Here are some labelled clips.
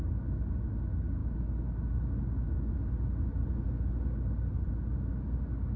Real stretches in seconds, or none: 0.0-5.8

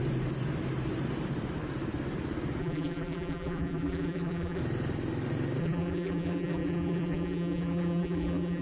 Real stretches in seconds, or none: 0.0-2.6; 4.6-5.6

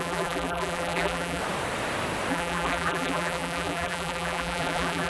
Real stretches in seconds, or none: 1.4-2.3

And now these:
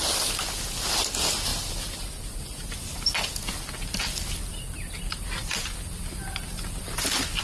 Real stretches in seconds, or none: 0.0-1.5; 2.4-5.4; 6.2-7.4